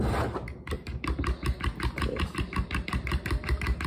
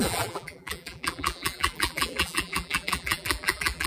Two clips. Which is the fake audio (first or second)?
second